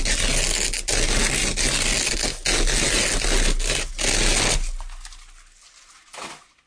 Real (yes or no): yes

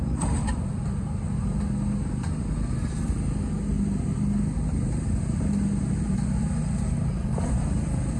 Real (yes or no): yes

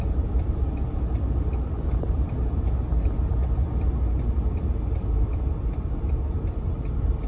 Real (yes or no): yes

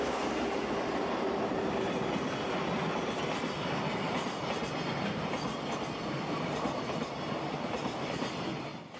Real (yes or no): yes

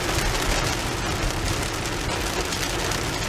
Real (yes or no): yes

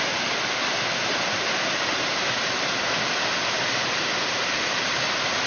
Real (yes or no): yes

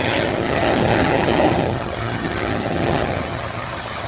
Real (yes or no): no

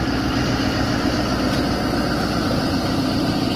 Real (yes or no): yes